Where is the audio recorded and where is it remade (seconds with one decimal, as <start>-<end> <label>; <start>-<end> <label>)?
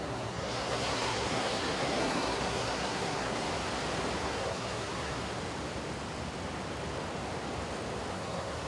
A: 0.0-3.5 remade; 3.5-4.2 recorded; 4.2-5.3 remade; 5.3-8.1 recorded; 8.1-8.7 remade